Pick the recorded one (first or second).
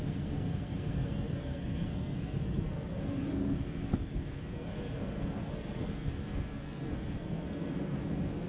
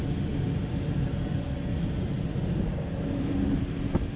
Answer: second